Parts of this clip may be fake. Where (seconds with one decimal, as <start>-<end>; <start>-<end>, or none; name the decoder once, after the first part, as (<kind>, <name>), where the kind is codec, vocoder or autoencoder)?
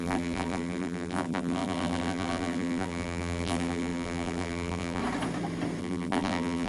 0.0-5.0 (vocoder, BigVGAN v2); 5.8-6.7